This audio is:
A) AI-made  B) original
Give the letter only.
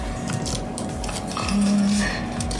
B